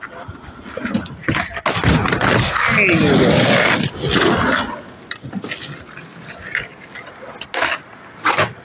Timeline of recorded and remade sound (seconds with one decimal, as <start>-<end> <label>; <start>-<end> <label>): 0.0-8.6 recorded